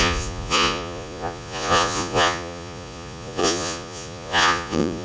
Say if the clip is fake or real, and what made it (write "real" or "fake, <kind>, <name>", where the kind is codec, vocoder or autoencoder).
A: fake, vocoder, Vocos